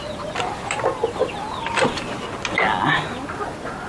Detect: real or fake real